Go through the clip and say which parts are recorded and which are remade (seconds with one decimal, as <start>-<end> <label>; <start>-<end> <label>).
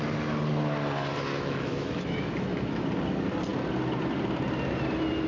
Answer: 0.0-1.3 recorded; 1.3-2.8 remade; 2.8-5.3 recorded